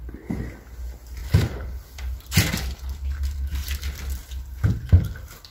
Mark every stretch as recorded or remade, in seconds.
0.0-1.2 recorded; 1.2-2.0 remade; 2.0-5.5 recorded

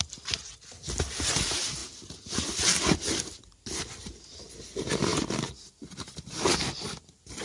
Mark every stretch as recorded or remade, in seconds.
0.0-1.8 remade; 1.8-3.4 recorded; 3.4-5.1 remade; 5.1-6.5 recorded; 6.5-7.4 remade

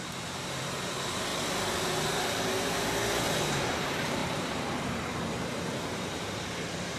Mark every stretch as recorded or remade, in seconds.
0.0-1.3 remade; 1.3-3.8 recorded; 3.8-7.0 remade

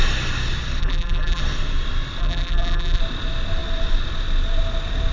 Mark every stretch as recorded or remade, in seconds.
0.0-0.8 recorded; 0.8-1.4 remade; 1.4-2.2 recorded; 2.2-3.0 remade; 3.0-5.1 recorded

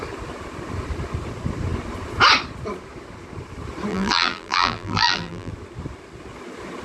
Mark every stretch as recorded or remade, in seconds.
0.0-3.9 recorded; 3.9-5.5 remade; 5.5-6.8 recorded

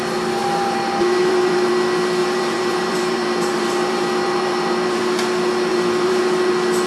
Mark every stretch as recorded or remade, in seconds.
0.0-0.4 recorded; 0.4-1.7 remade; 1.7-2.2 recorded; 2.2-5.0 remade; 5.0-5.7 recorded; 5.7-6.5 remade; 6.5-6.9 recorded

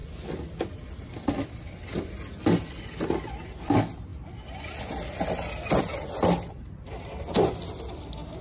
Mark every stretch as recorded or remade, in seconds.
0.0-8.4 recorded

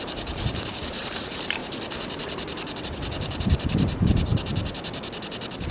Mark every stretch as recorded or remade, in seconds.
0.0-1.6 remade; 1.6-2.8 recorded; 2.8-4.3 remade; 4.3-5.7 recorded